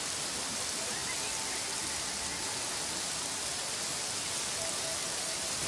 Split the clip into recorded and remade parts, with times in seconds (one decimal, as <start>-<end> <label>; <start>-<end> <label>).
0.0-5.7 recorded